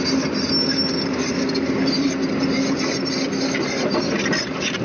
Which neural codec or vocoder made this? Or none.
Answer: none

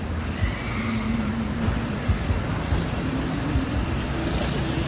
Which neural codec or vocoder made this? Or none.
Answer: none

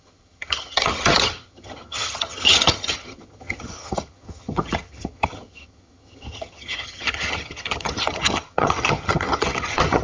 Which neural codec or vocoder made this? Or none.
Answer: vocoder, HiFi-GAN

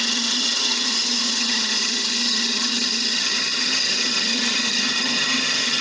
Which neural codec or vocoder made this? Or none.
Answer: vocoder, HiFi-GAN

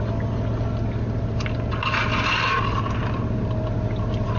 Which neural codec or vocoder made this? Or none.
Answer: none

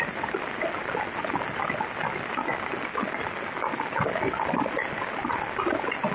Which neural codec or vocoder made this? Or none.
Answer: none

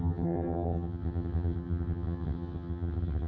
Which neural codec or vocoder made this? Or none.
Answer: vocoder, HiFi-GAN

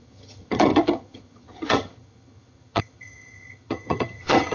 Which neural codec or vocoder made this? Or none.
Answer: vocoder, HiFi-GAN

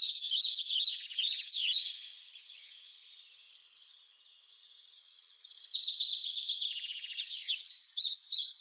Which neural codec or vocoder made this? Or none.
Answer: vocoder, HiFi-GAN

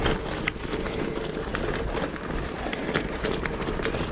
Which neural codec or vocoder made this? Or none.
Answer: none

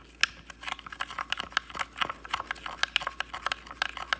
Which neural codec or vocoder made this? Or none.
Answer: none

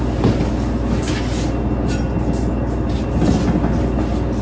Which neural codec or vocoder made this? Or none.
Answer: none